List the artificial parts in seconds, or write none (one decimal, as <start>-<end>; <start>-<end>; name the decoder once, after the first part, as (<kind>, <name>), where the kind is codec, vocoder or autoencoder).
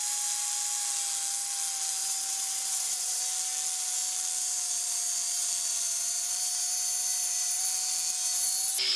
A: 2.0-3.2 (vocoder, WaveNeXt)